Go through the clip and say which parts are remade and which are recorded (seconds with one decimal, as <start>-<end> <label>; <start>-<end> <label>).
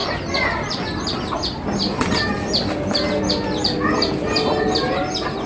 0.0-5.5 recorded